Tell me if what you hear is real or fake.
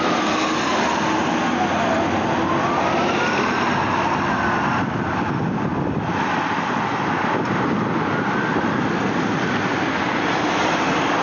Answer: real